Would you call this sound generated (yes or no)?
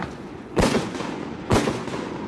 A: yes